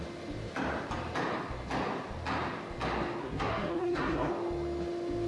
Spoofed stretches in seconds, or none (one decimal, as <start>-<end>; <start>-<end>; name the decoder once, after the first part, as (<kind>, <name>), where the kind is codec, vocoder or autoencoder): 3.2-4.3 (codec, SNAC)